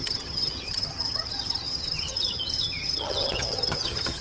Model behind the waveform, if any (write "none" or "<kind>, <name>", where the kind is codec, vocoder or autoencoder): vocoder, HiFi-GAN